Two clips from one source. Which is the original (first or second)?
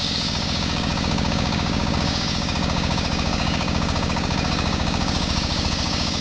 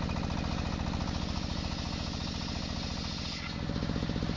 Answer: second